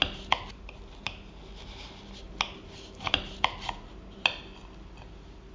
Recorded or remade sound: recorded